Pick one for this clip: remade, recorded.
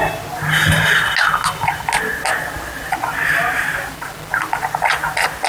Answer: recorded